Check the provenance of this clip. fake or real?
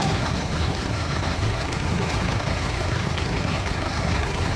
fake